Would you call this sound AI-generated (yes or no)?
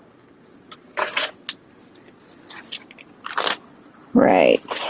no